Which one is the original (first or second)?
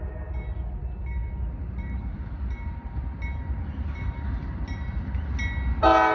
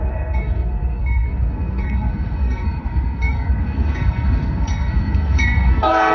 first